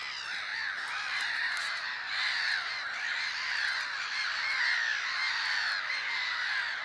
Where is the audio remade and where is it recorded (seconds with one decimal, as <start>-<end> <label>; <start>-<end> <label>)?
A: 0.0-6.8 recorded